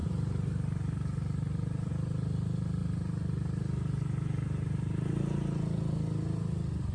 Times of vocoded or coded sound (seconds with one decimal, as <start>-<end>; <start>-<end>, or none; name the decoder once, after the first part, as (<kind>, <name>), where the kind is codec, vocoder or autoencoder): 0.0-1.9 (vocoder, BigVGAN v2); 2.8-5.2

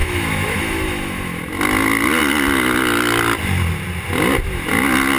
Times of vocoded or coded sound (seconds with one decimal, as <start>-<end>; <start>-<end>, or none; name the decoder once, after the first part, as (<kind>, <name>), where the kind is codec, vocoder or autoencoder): 0.0-1.4 (autoencoder, DAC-VAE)

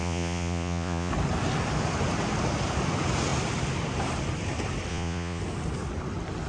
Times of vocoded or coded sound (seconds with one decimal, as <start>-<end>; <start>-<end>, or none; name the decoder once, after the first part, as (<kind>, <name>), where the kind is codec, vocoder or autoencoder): 0.0-1.1 (vocoder, Vocos); 4.9-5.4

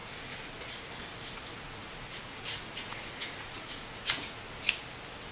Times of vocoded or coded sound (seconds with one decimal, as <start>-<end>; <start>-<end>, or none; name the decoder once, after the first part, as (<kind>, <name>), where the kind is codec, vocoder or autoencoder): 0.0-0.8 (vocoder, Vocos); 1.5-4.7

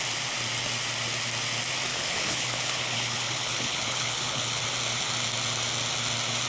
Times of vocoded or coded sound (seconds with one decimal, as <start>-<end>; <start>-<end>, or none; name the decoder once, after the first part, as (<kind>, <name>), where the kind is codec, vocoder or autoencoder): 1.9-4.6 (codec, HILCodec)

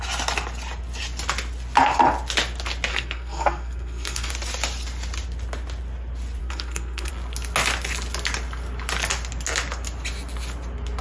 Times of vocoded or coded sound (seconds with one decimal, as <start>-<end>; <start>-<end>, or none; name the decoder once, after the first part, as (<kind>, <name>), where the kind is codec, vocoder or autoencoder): 2.9-4.3 (codec, SNAC); 6.4-7.1

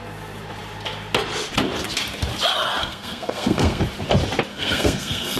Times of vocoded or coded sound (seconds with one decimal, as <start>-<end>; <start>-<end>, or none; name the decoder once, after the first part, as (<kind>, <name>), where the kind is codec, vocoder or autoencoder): 2.8-3.8 (codec, SNAC); 4.5-5.4